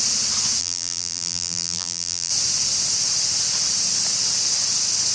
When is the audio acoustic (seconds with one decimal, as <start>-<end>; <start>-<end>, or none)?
0.0-0.6; 2.3-5.1